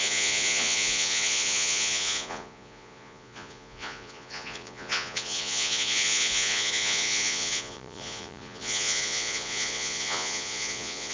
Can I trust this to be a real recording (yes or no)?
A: no